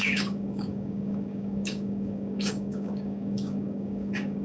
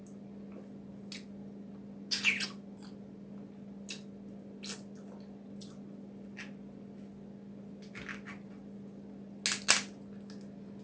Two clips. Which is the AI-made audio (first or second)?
first